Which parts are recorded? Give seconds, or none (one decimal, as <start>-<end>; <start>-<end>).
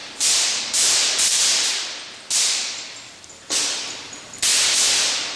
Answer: 3.2-4.5